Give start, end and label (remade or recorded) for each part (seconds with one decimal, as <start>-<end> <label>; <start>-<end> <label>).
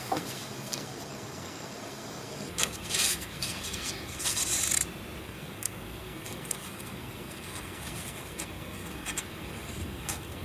0.0-4.4 remade; 4.4-5.2 recorded; 5.2-10.4 remade